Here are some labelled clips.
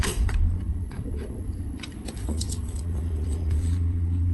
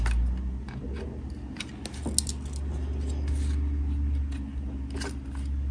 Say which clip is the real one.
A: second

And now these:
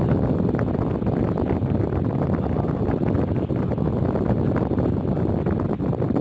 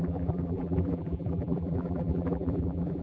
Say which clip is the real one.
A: first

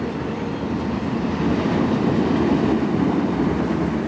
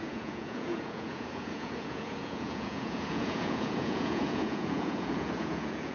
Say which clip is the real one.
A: first